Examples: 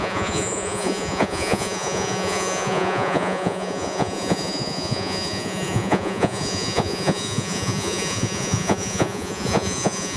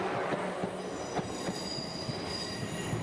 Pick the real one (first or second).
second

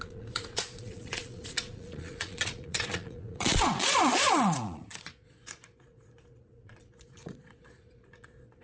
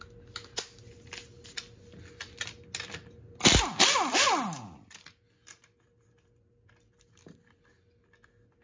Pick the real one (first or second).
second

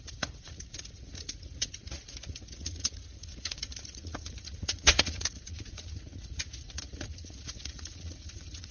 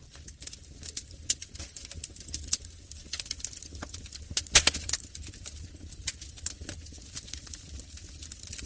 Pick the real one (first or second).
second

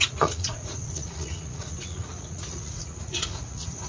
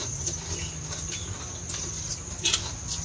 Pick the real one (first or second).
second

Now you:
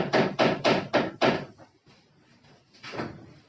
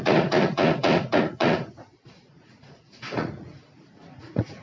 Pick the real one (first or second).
first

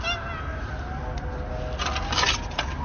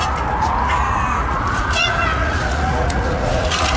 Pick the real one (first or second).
first